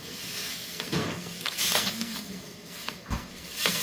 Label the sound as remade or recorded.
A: remade